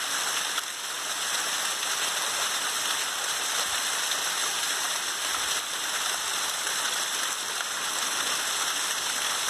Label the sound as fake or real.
real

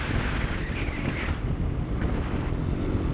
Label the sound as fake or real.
real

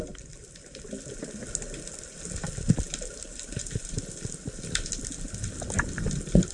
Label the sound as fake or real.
real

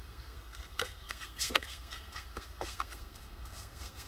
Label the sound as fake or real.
fake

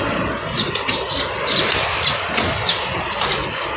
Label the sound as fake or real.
real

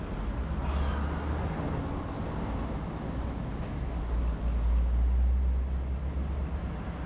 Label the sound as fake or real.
real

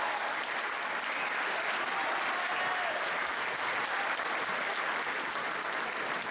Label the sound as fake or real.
real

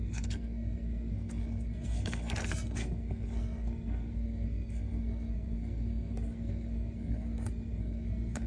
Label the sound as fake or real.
fake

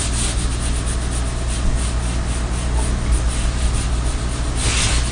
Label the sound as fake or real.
real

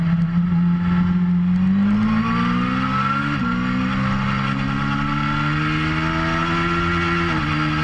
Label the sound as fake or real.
real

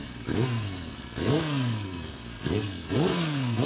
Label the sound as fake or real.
fake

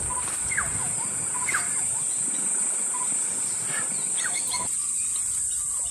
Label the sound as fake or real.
real